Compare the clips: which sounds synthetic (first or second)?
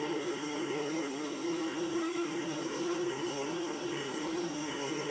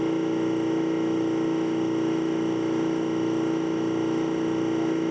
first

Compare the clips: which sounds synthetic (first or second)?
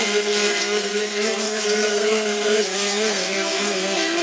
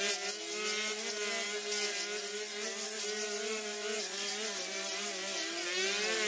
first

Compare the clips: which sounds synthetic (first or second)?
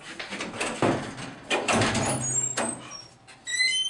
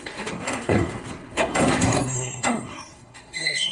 second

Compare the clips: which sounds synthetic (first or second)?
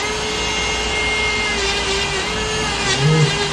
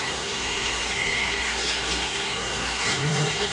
second